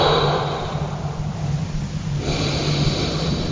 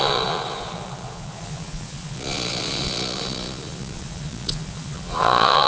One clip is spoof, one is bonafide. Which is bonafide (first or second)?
first